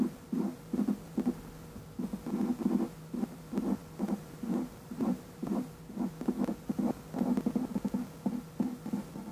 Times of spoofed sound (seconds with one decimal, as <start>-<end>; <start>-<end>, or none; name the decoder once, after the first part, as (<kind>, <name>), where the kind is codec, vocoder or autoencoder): none